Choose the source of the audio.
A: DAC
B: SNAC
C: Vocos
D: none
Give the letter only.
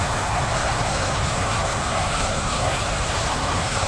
B